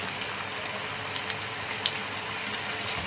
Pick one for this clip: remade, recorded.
recorded